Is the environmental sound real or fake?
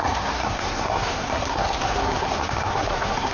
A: fake